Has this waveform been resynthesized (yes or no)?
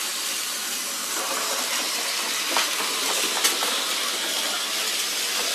no